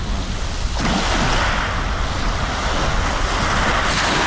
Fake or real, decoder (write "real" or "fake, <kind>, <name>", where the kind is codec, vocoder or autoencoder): real